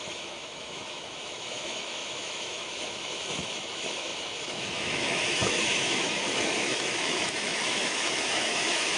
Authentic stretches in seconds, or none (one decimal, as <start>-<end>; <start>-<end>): none